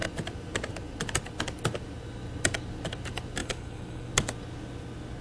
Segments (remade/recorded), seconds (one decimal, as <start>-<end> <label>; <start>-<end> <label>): 0.0-3.4 recorded; 3.4-4.1 remade; 4.1-5.2 recorded